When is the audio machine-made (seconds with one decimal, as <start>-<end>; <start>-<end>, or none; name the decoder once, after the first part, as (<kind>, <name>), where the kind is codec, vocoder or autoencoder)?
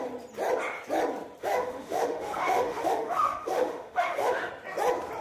1.4-4.5 (autoencoder, DAC-VAE)